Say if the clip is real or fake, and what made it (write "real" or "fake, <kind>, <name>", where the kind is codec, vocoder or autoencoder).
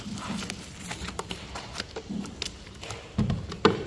real